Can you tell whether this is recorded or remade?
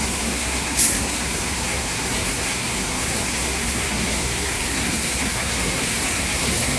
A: remade